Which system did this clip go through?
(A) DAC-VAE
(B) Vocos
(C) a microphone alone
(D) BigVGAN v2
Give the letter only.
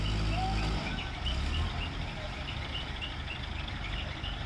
C